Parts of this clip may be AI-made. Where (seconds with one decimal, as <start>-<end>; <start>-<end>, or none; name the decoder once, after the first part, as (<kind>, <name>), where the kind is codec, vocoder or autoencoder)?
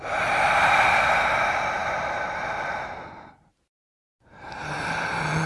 none